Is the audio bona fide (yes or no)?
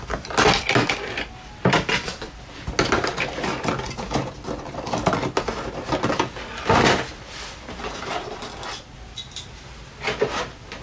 yes